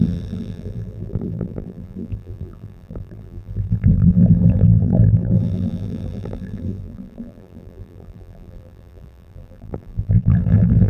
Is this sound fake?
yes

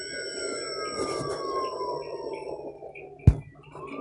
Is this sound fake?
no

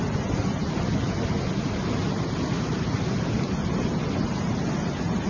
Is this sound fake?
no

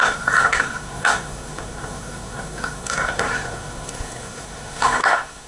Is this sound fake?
yes